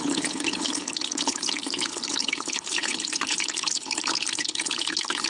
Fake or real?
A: fake